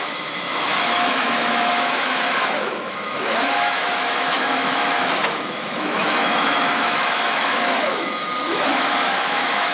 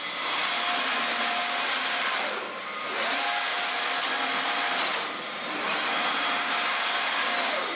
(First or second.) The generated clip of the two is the first